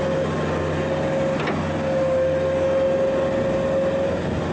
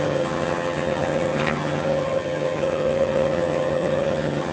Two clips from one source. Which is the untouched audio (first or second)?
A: first